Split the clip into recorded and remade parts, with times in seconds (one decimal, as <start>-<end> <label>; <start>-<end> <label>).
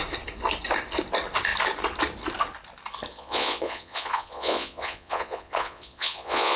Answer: 0.0-3.1 recorded; 3.1-6.6 remade